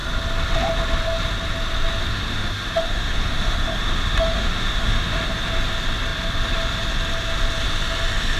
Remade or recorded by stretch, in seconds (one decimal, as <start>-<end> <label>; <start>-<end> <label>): 0.0-2.1 recorded; 2.1-5.3 remade; 5.3-8.4 recorded